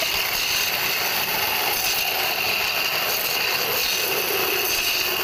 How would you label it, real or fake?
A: real